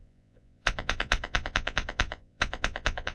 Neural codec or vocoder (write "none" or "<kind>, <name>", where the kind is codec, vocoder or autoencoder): vocoder, Vocos